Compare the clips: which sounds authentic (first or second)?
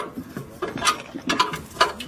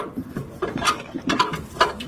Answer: first